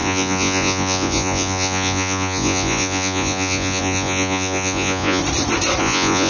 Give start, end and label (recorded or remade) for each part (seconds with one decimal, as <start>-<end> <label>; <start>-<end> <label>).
0.0-5.2 remade; 5.2-5.8 recorded; 5.8-6.3 remade